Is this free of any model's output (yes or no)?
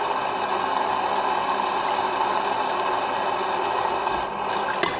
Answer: yes